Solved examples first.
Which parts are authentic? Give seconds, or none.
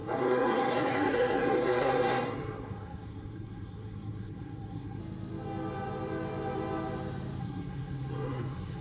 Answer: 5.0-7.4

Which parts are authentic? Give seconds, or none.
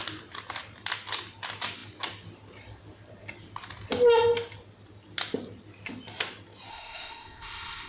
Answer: 0.0-6.7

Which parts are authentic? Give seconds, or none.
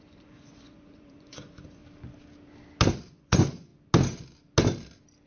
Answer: 1.8-2.9; 3.7-5.3